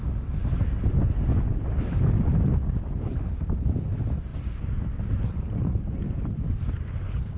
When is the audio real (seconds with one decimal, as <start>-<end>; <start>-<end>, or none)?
0.0-7.4